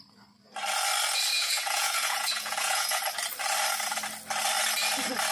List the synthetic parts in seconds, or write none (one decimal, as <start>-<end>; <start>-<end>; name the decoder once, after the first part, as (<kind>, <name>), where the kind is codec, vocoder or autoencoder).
1.3-3.0 (vocoder, Vocos)